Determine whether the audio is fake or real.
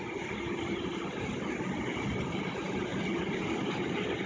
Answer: real